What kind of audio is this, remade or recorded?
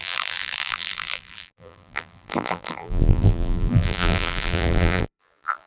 remade